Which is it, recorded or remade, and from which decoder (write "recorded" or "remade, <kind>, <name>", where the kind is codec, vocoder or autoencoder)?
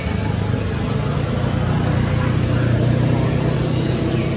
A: recorded